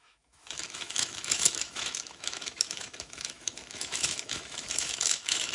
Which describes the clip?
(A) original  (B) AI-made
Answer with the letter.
B